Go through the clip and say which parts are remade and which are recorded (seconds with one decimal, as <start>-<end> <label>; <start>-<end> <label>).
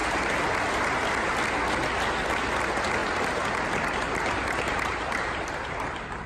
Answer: 0.0-3.0 recorded; 3.0-6.3 remade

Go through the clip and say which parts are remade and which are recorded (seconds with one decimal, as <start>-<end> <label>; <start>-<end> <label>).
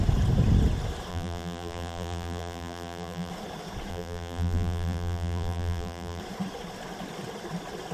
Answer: 0.0-1.1 recorded; 1.1-3.3 remade; 3.3-3.9 recorded; 3.9-6.2 remade; 6.2-7.9 recorded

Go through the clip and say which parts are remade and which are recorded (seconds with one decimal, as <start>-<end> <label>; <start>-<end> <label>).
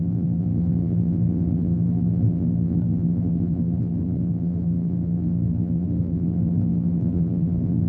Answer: 0.0-7.9 remade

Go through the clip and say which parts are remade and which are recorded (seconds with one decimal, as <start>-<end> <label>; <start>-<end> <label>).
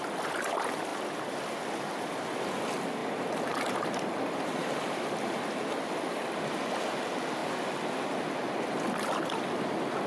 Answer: 0.0-0.9 recorded; 0.9-2.1 remade; 2.1-3.0 recorded; 3.0-7.0 remade; 7.0-7.4 recorded; 7.4-8.3 remade; 8.3-10.1 recorded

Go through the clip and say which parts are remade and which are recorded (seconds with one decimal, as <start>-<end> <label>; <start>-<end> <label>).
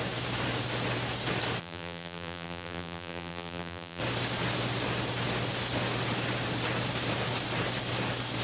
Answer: 0.0-1.6 recorded; 1.6-4.0 remade; 4.0-8.4 recorded